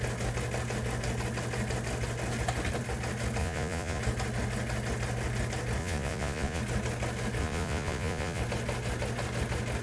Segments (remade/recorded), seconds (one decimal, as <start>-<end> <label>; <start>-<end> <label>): 0.0-3.4 recorded; 3.4-4.0 remade; 4.0-5.8 recorded; 5.8-6.6 remade; 6.6-7.4 recorded; 7.4-8.4 remade; 8.4-9.8 recorded